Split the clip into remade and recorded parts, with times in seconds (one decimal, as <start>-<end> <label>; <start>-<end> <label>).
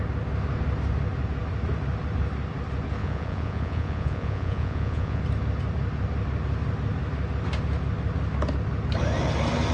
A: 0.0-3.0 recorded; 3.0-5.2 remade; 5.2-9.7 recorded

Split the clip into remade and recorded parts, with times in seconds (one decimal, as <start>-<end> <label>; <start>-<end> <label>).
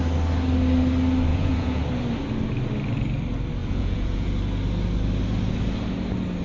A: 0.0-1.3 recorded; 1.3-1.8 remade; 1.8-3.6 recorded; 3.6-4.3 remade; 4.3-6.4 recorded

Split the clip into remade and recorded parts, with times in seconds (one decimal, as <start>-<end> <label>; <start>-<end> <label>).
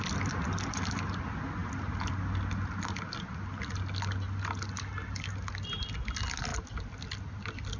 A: 0.0-7.8 recorded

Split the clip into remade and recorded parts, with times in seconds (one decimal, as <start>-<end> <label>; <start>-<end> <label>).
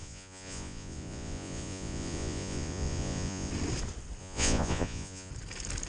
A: 0.0-3.5 remade; 3.5-4.2 recorded; 4.2-5.3 remade; 5.3-5.9 recorded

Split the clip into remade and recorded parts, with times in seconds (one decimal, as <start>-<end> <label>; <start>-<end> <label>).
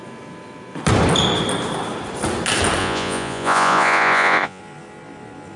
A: 0.0-2.8 recorded; 2.8-4.6 remade; 4.6-5.6 recorded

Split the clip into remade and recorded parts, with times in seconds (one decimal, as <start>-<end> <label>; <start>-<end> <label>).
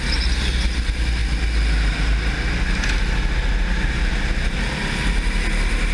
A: 0.0-5.9 recorded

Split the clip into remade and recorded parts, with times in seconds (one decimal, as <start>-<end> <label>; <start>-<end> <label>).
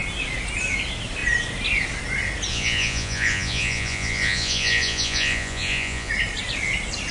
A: 0.0-2.5 recorded; 2.5-6.1 remade; 6.1-7.1 recorded